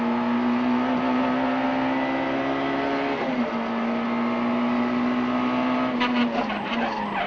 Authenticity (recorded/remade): recorded